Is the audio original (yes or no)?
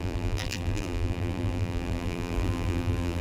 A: no